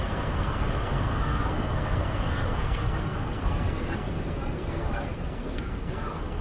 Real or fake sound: fake